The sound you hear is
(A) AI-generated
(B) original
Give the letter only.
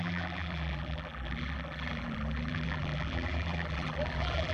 A